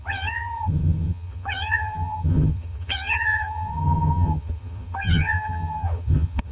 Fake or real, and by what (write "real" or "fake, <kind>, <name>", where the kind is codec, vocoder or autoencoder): fake, vocoder, HiFi-GAN